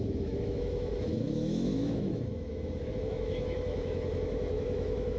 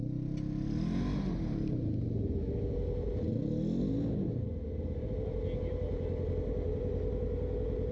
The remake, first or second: first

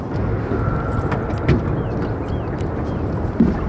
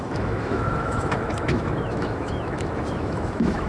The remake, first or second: second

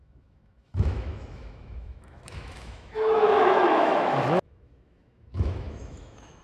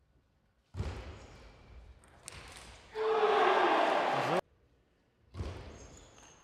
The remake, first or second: first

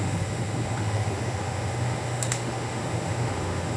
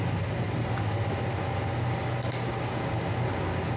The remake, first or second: first